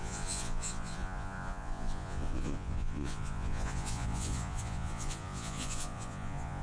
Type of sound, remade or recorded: remade